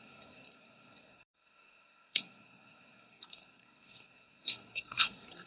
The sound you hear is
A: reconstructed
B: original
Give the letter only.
A